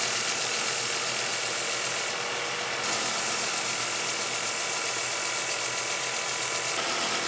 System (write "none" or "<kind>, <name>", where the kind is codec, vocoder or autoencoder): none